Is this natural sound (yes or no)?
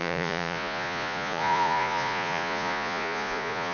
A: no